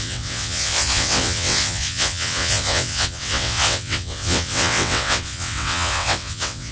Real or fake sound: fake